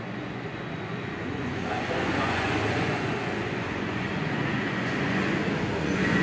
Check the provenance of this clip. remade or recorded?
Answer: remade